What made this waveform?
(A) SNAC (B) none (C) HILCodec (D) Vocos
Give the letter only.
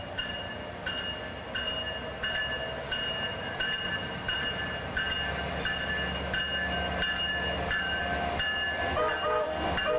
B